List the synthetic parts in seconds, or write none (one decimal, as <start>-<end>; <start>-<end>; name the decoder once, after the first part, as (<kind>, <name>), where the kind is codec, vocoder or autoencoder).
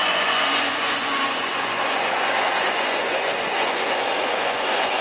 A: 0.0-5.0 (vocoder, Vocos)